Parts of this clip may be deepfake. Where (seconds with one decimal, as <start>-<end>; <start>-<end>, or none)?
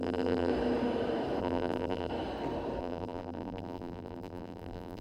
0.0-0.5; 1.4-2.1; 2.8-5.0